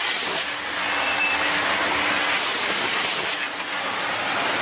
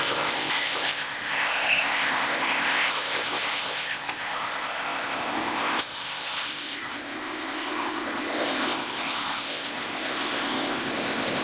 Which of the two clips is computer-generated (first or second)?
second